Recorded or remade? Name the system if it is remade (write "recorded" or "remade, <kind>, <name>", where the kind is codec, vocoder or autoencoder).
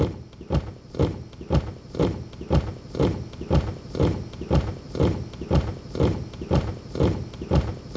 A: remade, vocoder, BigVGAN v2